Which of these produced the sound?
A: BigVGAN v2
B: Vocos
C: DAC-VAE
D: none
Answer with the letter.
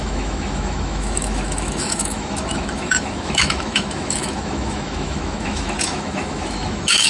C